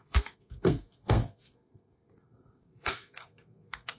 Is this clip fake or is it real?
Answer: fake